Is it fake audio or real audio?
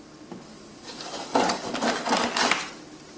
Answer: real